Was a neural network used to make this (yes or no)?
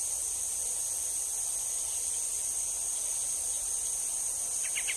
no